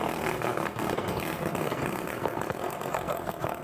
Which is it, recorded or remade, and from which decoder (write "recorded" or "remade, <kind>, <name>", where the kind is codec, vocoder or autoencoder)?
remade, codec, SNAC